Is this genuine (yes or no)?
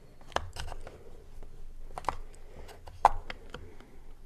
yes